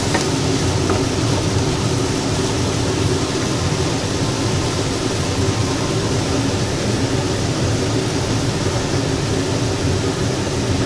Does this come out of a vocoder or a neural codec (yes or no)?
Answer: no